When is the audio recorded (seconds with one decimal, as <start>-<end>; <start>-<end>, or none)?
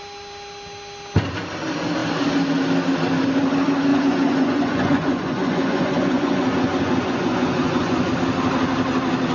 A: 0.0-3.9; 8.1-9.3